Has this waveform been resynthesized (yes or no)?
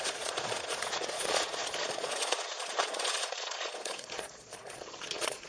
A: yes